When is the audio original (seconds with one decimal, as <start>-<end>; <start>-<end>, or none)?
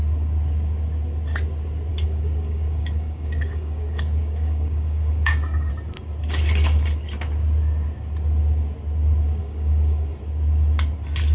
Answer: 0.0-1.9; 5.7-9.4; 10.2-11.3